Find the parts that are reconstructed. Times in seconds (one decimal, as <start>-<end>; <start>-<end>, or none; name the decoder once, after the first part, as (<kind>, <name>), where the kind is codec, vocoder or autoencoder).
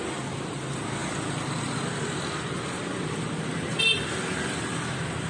none